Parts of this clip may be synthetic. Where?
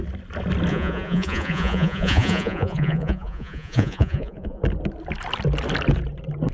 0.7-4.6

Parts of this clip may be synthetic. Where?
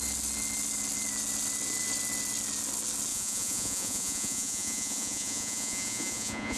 3.1-6.6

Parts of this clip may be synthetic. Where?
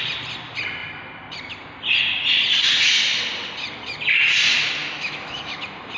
4.8-5.6